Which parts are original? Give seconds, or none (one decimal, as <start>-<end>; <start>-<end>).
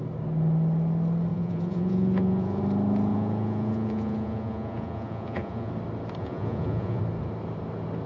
0.0-1.3; 2.6-3.1; 5.7-6.2; 7.0-8.1